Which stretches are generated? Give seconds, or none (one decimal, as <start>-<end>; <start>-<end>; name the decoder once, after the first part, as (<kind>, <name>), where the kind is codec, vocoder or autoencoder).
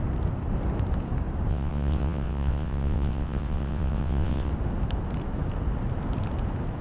1.5-4.5 (vocoder, WaveNeXt)